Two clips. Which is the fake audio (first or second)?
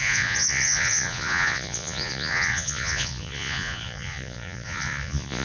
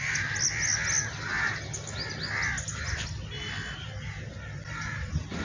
first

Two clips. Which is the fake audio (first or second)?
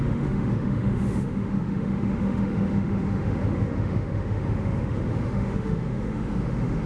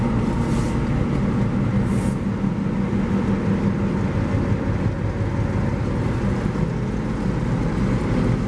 first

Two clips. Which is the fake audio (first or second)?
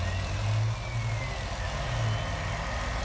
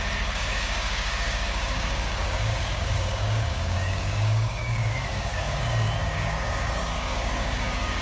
second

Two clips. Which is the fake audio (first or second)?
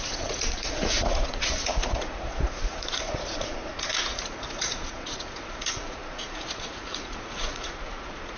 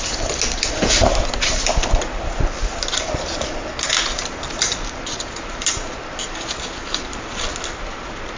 first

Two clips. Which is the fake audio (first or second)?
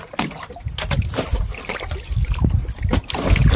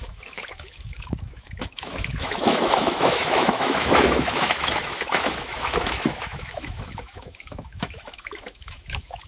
second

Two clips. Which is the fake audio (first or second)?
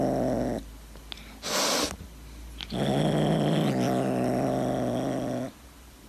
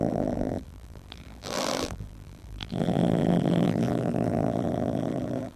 second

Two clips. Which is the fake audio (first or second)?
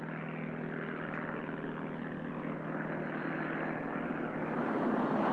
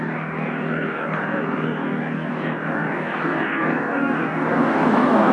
second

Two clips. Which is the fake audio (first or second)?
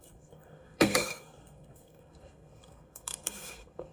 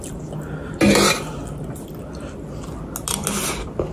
first